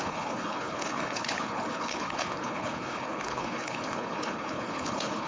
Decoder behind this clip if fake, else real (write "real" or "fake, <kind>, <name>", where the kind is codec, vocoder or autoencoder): fake, codec, HILCodec